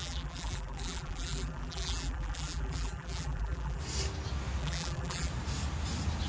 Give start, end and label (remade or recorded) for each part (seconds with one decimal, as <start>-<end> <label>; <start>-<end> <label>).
0.0-3.8 remade; 3.8-4.6 recorded; 4.6-5.3 remade; 5.3-6.3 recorded